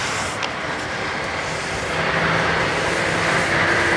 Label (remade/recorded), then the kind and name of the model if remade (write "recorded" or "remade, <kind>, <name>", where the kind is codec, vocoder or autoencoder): recorded